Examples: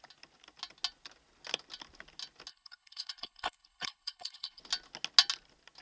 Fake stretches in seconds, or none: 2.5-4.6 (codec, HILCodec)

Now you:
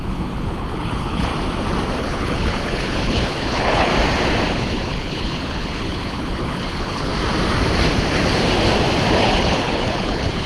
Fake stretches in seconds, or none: 0.0-1.3 (codec, HILCodec); 2.0-3.9; 4.5-7.1; 9.1-10.5

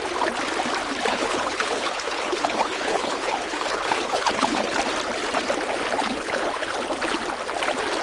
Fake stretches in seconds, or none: 1.1-4.8 (codec, HILCodec); 6.0-6.7

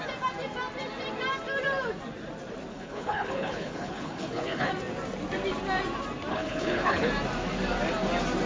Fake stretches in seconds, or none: 2.7-4.7 (codec, HILCodec); 6.3-7.1

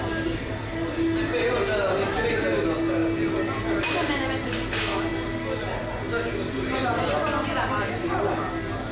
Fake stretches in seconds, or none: none